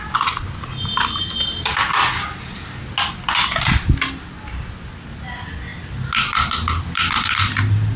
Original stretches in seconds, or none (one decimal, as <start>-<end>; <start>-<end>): 0.0-8.0